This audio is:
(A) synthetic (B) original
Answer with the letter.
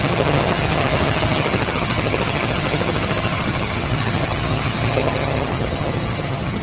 A